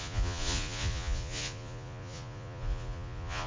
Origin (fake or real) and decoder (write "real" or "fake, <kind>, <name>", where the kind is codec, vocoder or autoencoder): fake, vocoder, Vocos